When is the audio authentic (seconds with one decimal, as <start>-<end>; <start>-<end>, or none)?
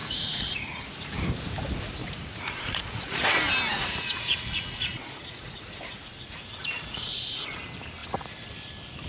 1.2-2.0; 3.3-3.7; 7.6-9.1